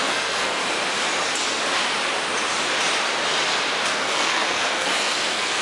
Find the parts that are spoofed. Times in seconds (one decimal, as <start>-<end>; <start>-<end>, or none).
0.0-0.6; 4.0-5.6